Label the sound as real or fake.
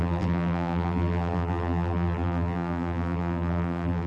fake